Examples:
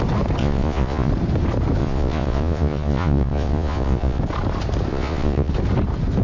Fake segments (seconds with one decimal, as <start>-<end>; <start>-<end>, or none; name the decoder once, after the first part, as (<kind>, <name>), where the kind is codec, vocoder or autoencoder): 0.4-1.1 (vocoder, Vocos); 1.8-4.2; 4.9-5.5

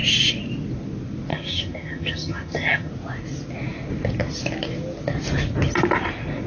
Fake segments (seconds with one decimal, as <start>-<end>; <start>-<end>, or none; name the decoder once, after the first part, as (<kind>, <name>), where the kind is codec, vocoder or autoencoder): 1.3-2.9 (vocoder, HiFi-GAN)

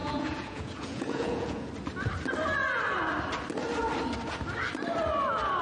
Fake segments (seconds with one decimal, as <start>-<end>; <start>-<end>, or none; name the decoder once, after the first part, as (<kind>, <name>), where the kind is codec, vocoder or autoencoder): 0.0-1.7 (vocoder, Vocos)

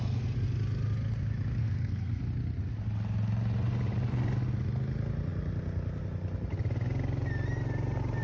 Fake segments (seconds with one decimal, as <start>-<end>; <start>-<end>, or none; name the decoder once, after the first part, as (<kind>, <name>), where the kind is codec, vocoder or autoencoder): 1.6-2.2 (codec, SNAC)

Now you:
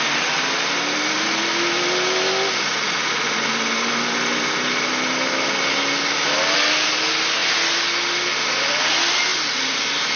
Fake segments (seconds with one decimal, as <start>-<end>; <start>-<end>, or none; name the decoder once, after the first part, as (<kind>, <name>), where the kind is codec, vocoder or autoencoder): none

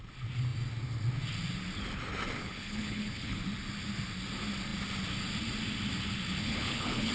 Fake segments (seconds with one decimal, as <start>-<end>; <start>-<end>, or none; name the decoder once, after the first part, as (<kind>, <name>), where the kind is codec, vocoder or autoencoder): 2.4-3.4 (codec, HILCodec); 6.4-7.1

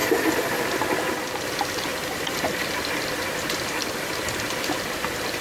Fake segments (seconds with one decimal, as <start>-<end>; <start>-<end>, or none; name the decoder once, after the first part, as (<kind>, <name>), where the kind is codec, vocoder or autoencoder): none

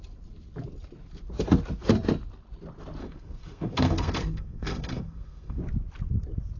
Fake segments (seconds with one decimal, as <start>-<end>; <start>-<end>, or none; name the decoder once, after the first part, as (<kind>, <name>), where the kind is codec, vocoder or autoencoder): 3.0-5.6 (codec, SNAC)